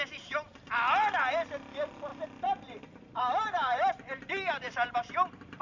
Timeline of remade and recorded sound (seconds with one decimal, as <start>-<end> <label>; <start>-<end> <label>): 0.0-2.1 recorded; 2.1-5.6 remade

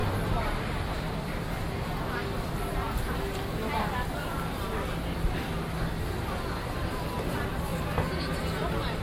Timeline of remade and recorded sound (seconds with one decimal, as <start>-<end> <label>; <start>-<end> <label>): 0.0-2.2 remade; 2.2-6.8 recorded; 6.8-7.7 remade; 7.7-8.4 recorded; 8.4-9.0 remade